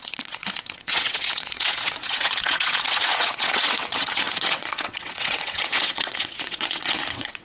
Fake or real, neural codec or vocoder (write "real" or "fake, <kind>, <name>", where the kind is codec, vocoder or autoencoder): fake, vocoder, WaveNeXt